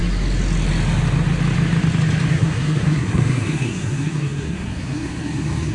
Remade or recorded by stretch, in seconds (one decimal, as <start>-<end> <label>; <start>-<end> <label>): 0.0-2.3 recorded; 2.3-5.7 remade